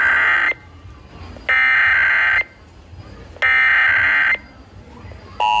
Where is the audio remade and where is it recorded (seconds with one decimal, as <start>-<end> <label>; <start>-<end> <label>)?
0.0-5.6 recorded